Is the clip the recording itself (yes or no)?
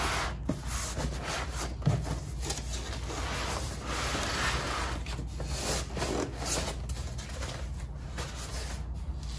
yes